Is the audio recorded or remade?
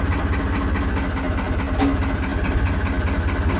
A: recorded